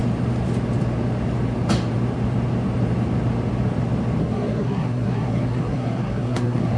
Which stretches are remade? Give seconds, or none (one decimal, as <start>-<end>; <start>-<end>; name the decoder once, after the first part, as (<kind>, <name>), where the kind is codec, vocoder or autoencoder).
4.2-6.8 (codec, SNAC)